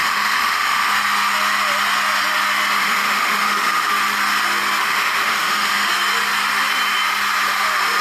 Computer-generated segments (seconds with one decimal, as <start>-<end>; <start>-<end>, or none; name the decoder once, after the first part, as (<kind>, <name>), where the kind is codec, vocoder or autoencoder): 0.0-0.9 (autoencoder, DAC-VAE); 2.8-3.9; 4.8-5.9